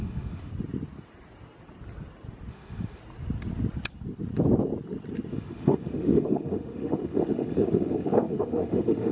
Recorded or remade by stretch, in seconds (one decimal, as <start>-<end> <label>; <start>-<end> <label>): 0.0-0.5 remade; 0.5-2.5 recorded; 2.5-3.0 remade; 3.0-5.3 recorded; 5.3-9.1 remade